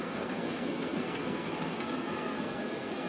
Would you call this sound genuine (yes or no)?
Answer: no